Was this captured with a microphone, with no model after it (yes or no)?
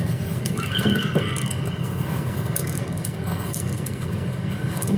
no